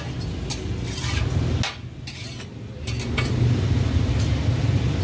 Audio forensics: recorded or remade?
recorded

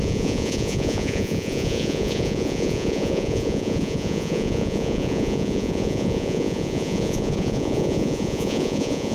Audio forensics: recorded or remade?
remade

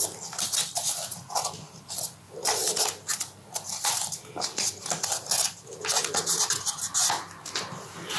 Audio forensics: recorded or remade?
recorded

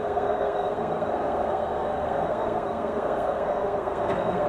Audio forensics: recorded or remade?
remade